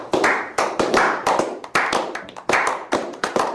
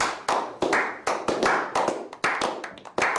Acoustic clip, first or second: second